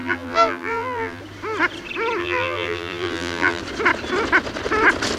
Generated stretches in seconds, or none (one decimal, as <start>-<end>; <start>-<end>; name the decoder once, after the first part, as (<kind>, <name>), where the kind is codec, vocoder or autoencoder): 0.0-1.2 (vocoder, BigVGAN v2); 2.2-3.6

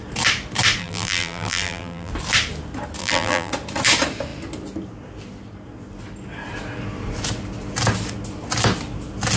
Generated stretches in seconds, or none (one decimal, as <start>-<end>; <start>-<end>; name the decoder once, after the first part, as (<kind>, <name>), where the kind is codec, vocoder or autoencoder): 0.8-2.1 (vocoder, BigVGAN v2); 3.0-3.5

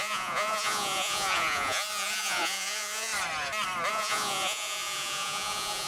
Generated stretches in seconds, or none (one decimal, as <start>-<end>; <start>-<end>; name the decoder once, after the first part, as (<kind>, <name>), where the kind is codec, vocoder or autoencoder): 0.0-3.1 (vocoder, Vocos); 3.9-5.9

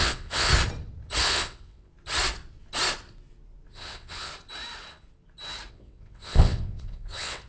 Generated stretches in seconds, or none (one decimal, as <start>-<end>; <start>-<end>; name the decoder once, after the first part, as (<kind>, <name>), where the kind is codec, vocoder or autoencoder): 0.0-0.5 (vocoder, WaveNeXt); 1.2-1.9; 3.7-4.3; 5.7-7.5

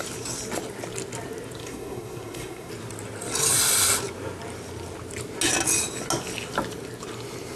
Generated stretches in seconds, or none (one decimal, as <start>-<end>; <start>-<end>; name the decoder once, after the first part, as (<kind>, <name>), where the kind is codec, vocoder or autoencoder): 1.6-2.7 (codec, SNAC)

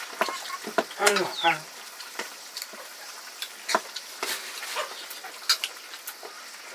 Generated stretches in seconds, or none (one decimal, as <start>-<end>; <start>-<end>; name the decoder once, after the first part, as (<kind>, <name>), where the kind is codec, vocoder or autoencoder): 1.0-4.6 (vocoder, BigVGAN v2)

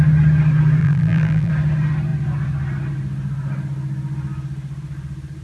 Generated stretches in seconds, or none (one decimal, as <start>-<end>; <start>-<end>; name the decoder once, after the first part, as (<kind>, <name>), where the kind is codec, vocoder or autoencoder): 0.8-1.5 (vocoder, BigVGAN v2)